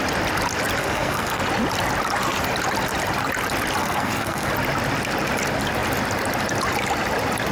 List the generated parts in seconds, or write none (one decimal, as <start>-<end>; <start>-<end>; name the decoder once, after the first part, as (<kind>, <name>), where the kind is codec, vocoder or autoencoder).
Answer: 0.8-1.4 (codec, SNAC); 3.8-4.5